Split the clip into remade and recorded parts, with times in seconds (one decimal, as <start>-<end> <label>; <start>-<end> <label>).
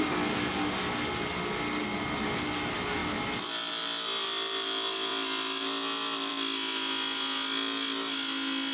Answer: 0.0-8.7 recorded